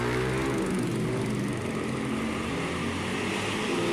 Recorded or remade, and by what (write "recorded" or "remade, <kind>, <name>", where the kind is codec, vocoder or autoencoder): recorded